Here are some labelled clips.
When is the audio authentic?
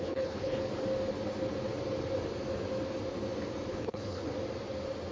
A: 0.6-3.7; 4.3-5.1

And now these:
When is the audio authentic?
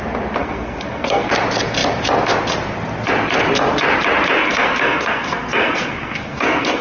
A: 0.0-0.4; 1.3-4.4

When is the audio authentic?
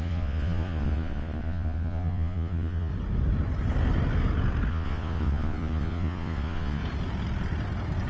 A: 2.9-4.7; 6.8-8.1